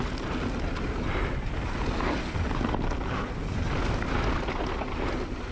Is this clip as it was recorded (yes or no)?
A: yes